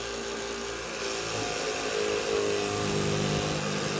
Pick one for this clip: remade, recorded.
recorded